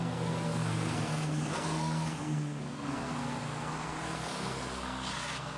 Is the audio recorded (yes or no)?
no